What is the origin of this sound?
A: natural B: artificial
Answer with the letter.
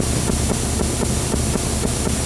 A